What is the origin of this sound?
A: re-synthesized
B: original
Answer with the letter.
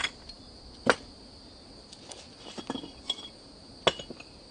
B